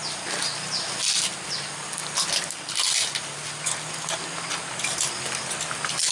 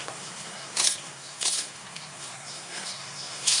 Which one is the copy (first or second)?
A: second